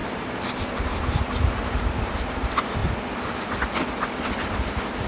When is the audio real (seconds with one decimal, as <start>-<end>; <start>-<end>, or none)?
0.0-5.1